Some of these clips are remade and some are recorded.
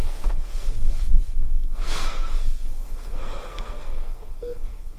remade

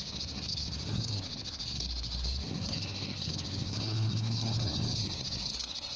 remade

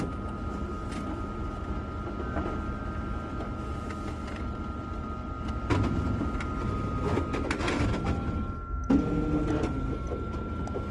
recorded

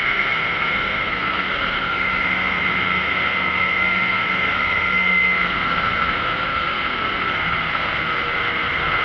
remade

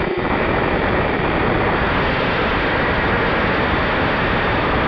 recorded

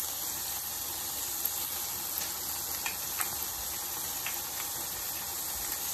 recorded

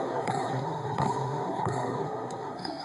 remade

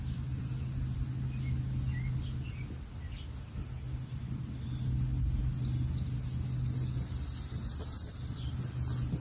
recorded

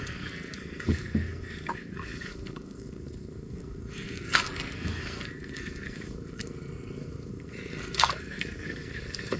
remade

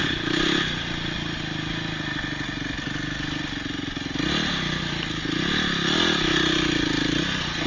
recorded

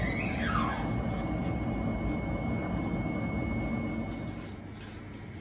recorded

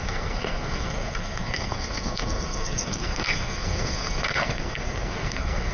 remade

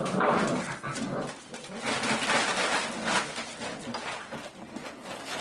recorded